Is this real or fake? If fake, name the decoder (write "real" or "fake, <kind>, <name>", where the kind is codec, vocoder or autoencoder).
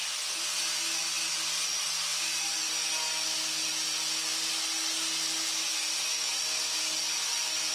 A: real